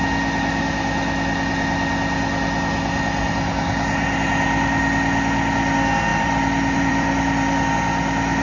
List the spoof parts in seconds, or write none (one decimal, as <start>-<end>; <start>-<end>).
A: 6.1-7.7

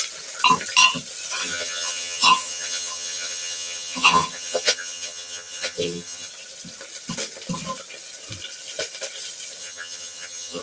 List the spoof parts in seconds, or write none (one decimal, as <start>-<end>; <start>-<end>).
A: 1.4-6.3; 9.6-10.6

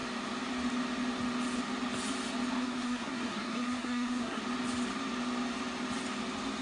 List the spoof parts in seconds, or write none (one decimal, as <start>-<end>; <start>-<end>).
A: 2.6-4.4

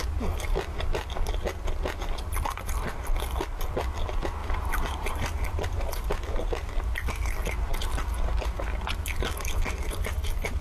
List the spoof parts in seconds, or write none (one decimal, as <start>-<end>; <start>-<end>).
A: 4.4-6.1

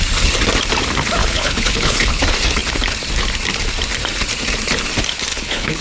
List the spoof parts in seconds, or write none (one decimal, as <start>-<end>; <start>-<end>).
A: 1.2-2.2; 5.3-5.8

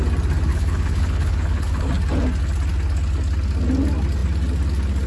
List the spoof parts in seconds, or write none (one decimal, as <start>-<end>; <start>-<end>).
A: 0.5-1.9

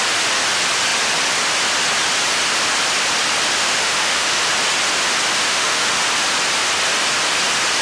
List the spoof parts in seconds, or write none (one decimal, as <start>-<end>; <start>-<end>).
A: 3.6-4.4; 5.4-6.0

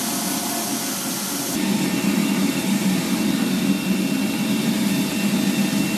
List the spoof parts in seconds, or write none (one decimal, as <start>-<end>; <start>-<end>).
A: 2.2-3.0